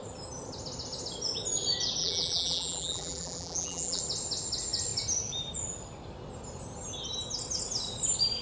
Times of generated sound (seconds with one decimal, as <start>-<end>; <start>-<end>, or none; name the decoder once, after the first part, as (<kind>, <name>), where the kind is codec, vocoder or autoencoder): 2.0-4.0 (vocoder, BigVGAN v2)